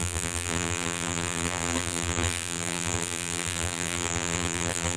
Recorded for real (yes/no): no